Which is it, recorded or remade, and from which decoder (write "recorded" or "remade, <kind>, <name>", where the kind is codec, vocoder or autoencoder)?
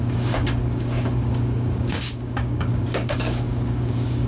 remade, codec, DAC